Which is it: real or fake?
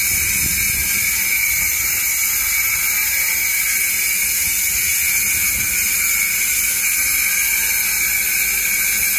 real